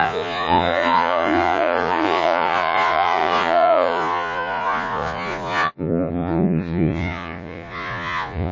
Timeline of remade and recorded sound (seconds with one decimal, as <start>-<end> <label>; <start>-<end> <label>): 0.0-8.5 remade